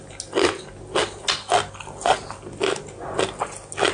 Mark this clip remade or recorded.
recorded